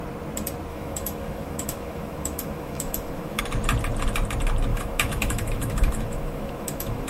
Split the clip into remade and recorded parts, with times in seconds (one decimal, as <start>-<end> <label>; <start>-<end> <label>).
0.0-0.7 recorded; 0.7-3.4 remade; 3.4-4.7 recorded; 4.7-7.1 remade